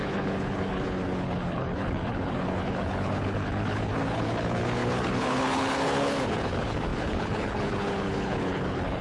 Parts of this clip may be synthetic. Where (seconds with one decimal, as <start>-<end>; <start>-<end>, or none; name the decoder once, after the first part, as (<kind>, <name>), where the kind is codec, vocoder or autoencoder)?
0.0-9.0 (codec, HILCodec)